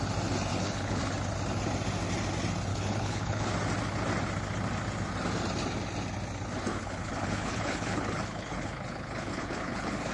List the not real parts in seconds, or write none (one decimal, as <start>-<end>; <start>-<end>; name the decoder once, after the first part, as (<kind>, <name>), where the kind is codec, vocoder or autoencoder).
0.5-1.0 (codec, HILCodec); 2.7-3.4; 6.7-10.1